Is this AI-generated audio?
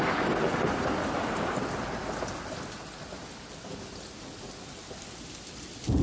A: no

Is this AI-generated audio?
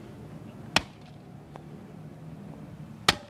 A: no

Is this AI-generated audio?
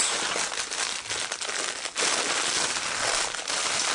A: no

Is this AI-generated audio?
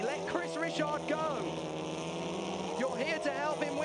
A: no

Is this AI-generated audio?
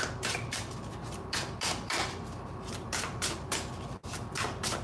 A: no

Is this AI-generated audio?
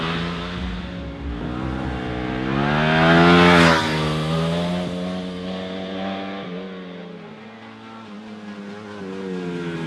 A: no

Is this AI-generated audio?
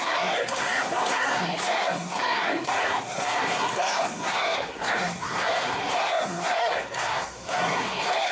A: yes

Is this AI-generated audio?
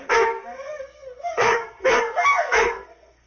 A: yes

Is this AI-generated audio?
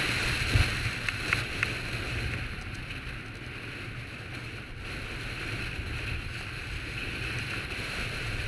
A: no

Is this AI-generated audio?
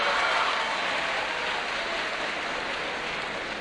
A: no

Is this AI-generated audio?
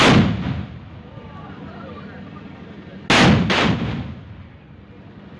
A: no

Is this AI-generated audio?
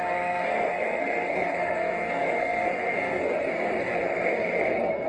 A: yes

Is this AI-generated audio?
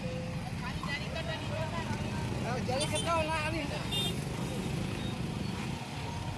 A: no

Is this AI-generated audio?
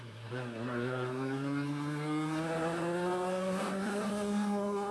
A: yes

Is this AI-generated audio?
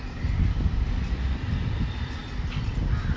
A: no